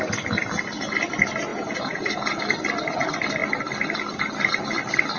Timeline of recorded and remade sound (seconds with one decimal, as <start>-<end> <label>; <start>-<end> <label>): 0.0-1.5 recorded; 1.5-2.4 remade; 2.4-5.2 recorded